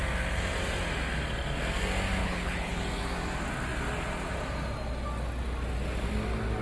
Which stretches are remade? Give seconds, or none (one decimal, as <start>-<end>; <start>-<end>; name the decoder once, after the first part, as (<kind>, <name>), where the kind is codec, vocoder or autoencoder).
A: 2.2-2.8 (codec, HILCodec)